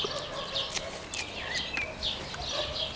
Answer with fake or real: real